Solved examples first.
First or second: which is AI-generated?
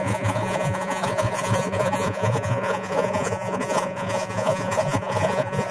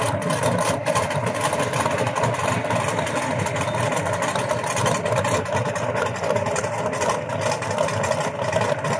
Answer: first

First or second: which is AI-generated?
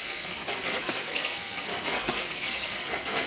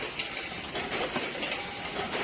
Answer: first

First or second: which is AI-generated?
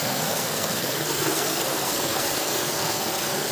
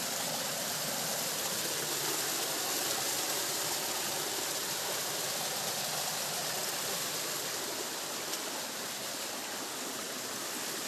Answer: first